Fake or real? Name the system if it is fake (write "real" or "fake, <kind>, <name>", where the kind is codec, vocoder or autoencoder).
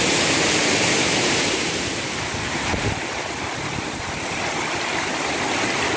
real